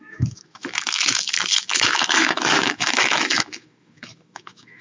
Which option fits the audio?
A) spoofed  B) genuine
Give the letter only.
A